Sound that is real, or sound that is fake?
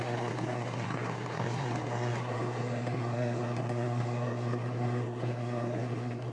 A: fake